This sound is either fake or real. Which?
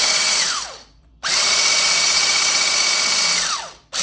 real